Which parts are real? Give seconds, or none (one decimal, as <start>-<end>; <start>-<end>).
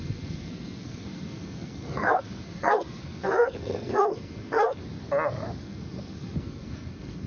4.8-5.6